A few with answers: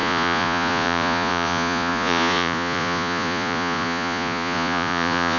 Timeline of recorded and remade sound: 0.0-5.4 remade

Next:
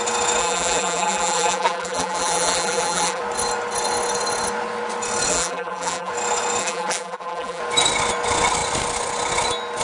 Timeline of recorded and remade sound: 0.0-0.4 recorded; 0.4-3.2 remade; 3.2-5.3 recorded; 5.3-6.1 remade; 6.1-6.6 recorded; 6.6-7.6 remade; 7.6-9.8 recorded

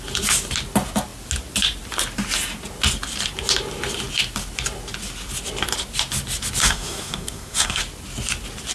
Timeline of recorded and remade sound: 0.0-6.6 recorded; 6.6-7.8 remade; 7.8-8.7 recorded

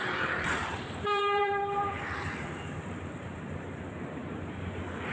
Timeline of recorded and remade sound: 0.0-4.2 remade; 4.2-5.1 recorded